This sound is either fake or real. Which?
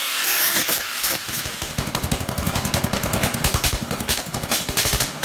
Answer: fake